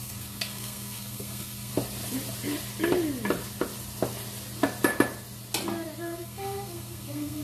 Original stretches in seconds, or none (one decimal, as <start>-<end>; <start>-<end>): 1.7-6.0